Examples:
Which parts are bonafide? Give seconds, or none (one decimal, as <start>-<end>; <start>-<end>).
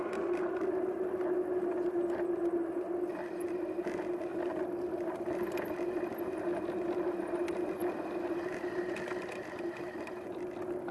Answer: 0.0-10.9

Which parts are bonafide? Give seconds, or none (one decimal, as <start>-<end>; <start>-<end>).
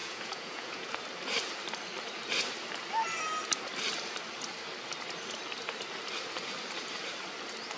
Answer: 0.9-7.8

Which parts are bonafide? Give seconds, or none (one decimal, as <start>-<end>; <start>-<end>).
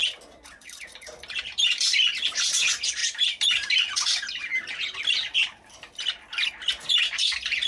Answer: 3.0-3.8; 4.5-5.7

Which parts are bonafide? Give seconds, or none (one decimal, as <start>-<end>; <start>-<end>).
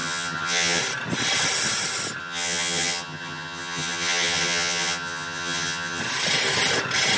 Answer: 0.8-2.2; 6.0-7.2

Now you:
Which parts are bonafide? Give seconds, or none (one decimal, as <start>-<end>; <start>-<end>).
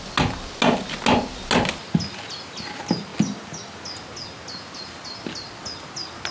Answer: 0.0-6.3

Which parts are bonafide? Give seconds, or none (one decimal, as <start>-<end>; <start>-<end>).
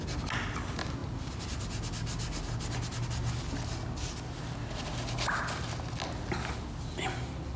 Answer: 0.0-7.6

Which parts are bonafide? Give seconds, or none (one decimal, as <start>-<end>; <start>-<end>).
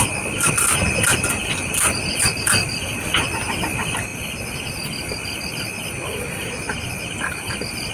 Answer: 0.0-7.9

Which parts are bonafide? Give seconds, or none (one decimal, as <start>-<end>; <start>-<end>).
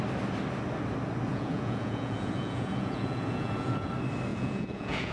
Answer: 0.0-1.3; 3.9-4.3